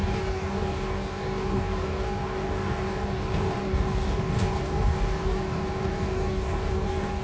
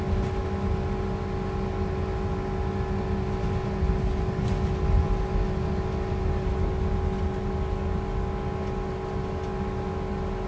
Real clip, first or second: second